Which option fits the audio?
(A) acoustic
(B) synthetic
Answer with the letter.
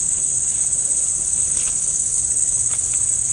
B